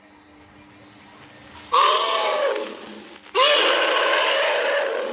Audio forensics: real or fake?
real